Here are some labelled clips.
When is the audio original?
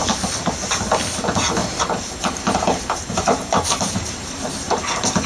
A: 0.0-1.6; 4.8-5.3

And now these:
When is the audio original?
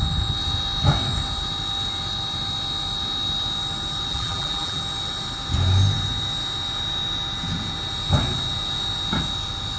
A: 0.0-4.1; 4.8-9.8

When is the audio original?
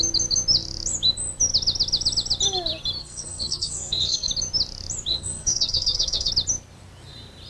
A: 0.0-3.0; 4.3-5.1; 6.3-7.5